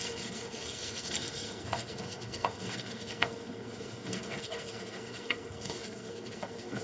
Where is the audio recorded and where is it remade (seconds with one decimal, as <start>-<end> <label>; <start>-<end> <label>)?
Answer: 0.0-6.8 remade

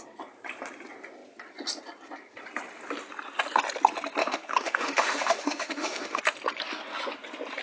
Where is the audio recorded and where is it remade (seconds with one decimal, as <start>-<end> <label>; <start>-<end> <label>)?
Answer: 0.0-4.2 recorded; 4.2-6.2 remade; 6.2-7.6 recorded

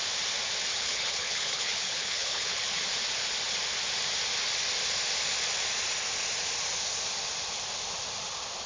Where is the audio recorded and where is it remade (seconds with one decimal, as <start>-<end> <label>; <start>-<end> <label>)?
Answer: 0.0-0.7 recorded; 0.7-2.8 remade; 2.8-8.7 recorded

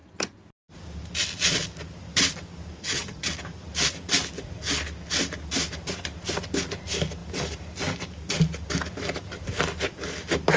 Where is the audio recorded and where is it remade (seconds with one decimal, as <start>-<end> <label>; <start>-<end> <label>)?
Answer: 0.0-2.8 recorded; 2.8-3.3 remade; 3.3-10.6 recorded

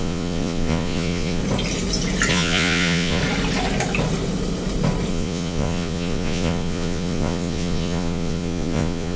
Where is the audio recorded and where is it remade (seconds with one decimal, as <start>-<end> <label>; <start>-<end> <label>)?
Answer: 0.0-1.4 remade; 1.4-2.3 recorded; 2.3-3.2 remade; 3.2-5.1 recorded; 5.1-9.2 remade

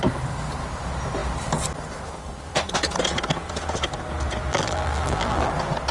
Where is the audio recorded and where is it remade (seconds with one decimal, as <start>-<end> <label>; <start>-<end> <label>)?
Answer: 0.0-4.5 recorded; 4.5-5.5 remade; 5.5-5.9 recorded